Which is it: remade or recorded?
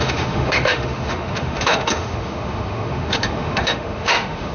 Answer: remade